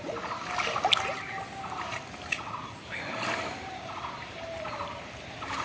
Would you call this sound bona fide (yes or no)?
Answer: yes